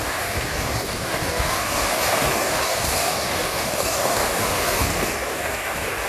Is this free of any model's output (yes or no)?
no